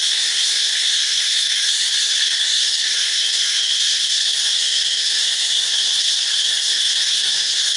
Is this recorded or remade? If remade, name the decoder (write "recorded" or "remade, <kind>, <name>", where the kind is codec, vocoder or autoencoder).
remade, codec, SNAC